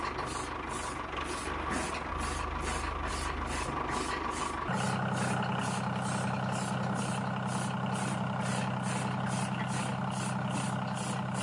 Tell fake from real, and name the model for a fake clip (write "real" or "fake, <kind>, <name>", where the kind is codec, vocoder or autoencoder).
real